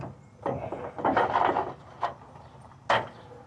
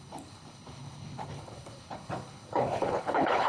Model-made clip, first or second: second